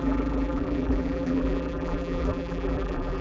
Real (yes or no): no